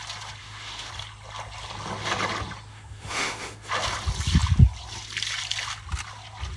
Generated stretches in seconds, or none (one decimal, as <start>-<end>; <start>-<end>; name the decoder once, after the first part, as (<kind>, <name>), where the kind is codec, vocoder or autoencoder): 0.4-0.9 (autoencoder, DAC-VAE); 2.7-3.7